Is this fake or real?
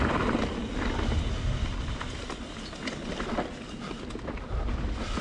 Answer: real